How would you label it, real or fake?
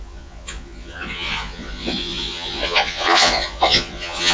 fake